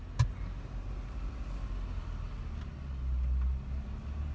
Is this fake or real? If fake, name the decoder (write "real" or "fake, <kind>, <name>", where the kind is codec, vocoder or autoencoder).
real